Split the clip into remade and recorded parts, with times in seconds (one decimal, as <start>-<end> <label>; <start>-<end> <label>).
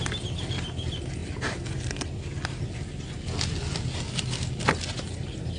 0.0-5.6 recorded